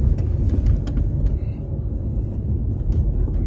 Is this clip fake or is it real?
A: real